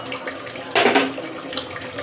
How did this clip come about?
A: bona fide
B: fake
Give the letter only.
A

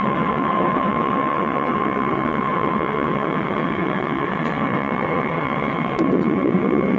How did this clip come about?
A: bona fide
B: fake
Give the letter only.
B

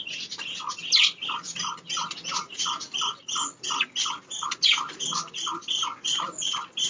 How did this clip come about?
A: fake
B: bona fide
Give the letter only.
B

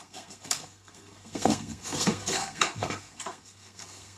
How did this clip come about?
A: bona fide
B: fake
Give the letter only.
B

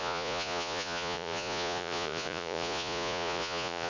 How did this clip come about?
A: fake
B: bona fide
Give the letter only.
A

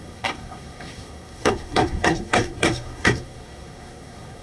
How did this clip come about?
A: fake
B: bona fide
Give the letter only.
A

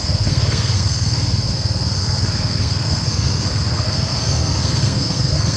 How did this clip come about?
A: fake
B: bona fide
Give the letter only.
A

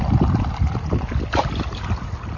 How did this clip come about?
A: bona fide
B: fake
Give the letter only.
A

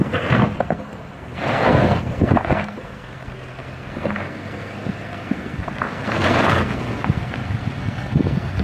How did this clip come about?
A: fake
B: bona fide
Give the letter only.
A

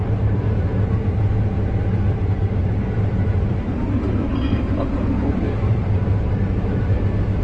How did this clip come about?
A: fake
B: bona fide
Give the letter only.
A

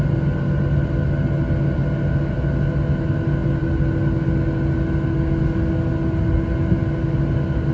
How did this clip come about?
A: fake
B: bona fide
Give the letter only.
B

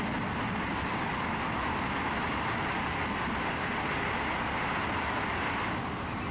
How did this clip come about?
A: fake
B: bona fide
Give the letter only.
B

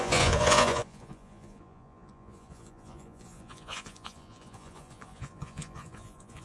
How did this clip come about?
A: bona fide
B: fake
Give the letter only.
B